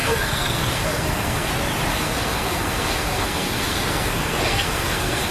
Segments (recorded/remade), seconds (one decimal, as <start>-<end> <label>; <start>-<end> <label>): 0.0-1.5 remade; 1.5-1.9 recorded; 1.9-5.3 remade